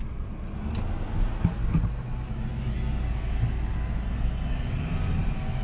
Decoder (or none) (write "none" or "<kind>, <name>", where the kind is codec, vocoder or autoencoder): none